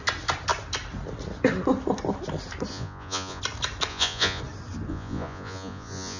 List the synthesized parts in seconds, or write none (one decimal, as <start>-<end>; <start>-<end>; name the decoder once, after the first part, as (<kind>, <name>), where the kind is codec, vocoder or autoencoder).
2.7-3.4 (vocoder, Vocos); 3.9-4.4; 4.9-6.2